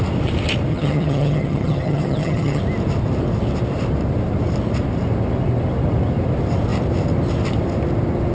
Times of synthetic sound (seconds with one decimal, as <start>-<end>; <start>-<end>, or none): 0.7-2.6